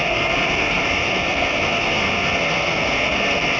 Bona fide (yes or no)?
no